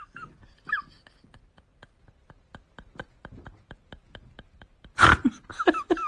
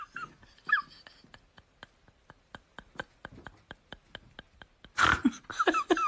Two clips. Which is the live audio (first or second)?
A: second